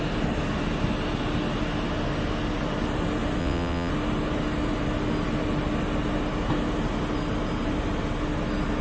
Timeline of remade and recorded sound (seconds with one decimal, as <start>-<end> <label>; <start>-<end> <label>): 0.0-3.4 recorded; 3.4-3.9 remade; 3.9-8.8 recorded